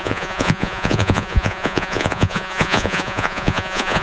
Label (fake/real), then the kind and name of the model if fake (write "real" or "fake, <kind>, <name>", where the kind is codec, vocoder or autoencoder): fake, vocoder, Vocos